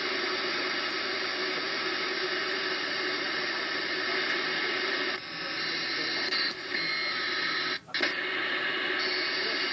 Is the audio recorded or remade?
recorded